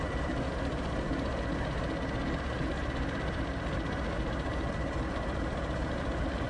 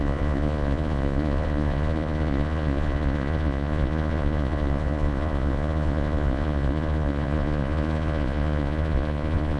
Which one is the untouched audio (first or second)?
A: first